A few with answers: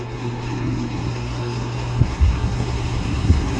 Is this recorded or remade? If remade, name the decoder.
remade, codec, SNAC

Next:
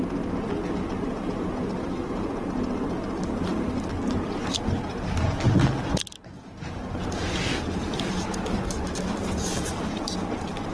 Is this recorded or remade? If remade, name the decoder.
recorded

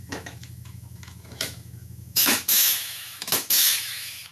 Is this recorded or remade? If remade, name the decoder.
remade, autoencoder, DAC-VAE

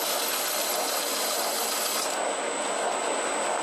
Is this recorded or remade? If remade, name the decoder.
recorded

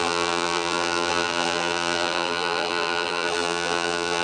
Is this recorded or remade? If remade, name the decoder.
remade, vocoder, BigVGAN v2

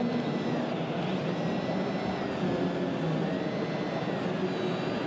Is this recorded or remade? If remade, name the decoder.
recorded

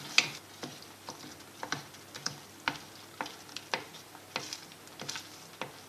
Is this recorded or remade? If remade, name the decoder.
recorded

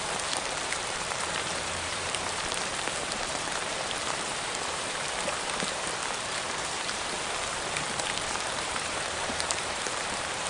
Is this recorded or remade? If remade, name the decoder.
remade, vocoder, BigVGAN v2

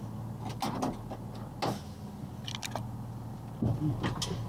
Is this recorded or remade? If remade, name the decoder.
recorded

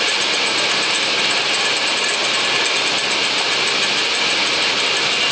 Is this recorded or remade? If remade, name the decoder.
recorded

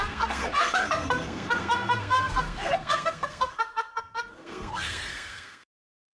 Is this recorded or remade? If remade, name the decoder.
remade, codec, SNAC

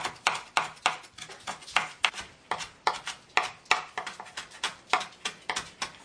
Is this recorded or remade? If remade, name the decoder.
recorded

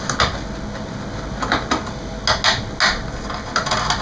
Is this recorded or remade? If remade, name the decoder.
recorded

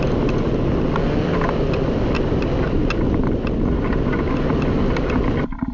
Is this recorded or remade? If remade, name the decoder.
recorded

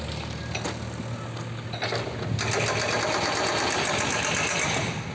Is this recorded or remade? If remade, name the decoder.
recorded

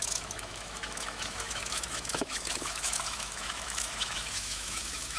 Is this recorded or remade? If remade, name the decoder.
remade, autoencoder, DAC-VAE